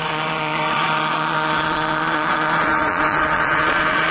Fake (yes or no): yes